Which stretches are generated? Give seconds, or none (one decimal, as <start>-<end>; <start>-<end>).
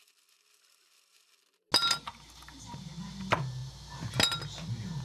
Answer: 1.8-2.9; 3.6-4.1